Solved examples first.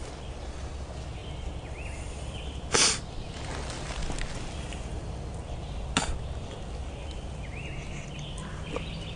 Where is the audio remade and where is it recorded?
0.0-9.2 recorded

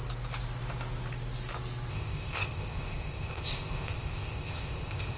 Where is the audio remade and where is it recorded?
0.0-1.9 recorded; 1.9-5.2 remade

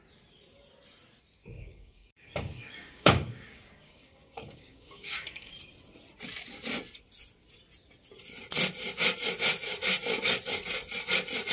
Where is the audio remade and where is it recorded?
0.0-1.4 recorded; 1.4-5.5 remade; 5.5-11.5 recorded

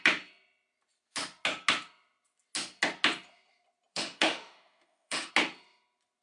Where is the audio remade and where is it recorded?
0.0-3.9 recorded; 3.9-5.3 remade; 5.3-6.2 recorded

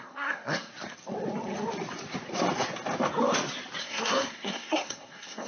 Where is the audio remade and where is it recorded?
0.0-0.7 remade; 0.7-3.8 recorded; 3.8-5.5 remade

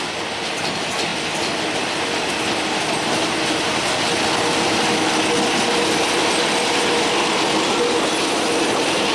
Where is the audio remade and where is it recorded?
0.0-9.1 recorded

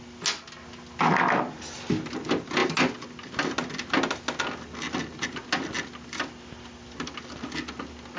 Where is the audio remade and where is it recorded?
0.0-8.2 recorded

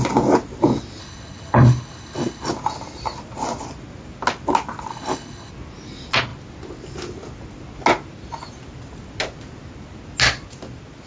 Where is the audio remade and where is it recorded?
0.0-1.0 recorded; 1.0-2.5 remade; 2.5-4.9 recorded; 4.9-5.5 remade; 5.5-11.1 recorded